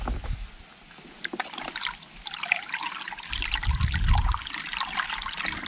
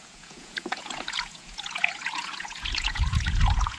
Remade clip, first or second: second